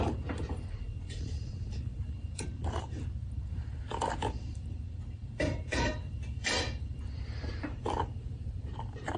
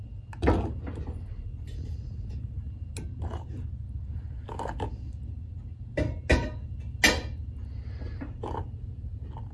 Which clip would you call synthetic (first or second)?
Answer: first